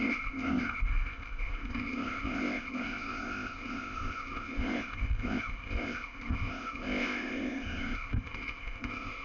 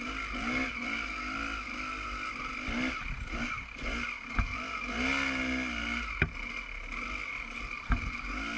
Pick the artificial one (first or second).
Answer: first